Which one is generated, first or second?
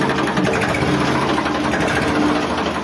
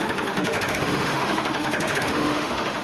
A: second